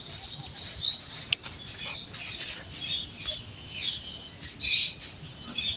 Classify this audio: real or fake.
real